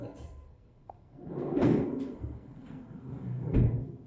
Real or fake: fake